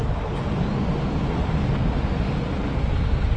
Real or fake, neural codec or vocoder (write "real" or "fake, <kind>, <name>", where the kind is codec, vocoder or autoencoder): real